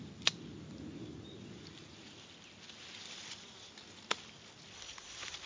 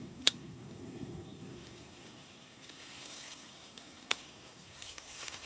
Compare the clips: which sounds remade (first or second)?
second